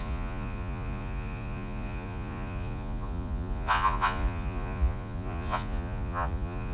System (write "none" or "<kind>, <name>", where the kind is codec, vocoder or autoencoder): vocoder, Vocos